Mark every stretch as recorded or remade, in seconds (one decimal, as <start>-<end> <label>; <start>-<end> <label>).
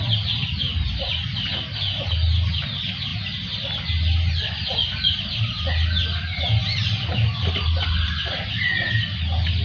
0.0-6.6 recorded; 6.6-8.6 remade; 8.6-9.6 recorded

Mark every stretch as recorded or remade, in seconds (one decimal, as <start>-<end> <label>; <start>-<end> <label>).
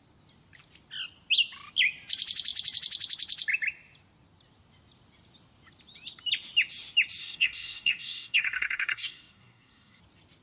0.0-7.2 recorded; 7.2-10.0 remade; 10.0-10.4 recorded